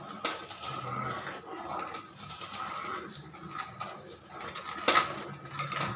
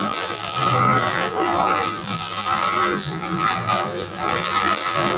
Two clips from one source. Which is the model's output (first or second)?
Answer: second